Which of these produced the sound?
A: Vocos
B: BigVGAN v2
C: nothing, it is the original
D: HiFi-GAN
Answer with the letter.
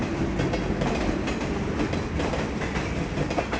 C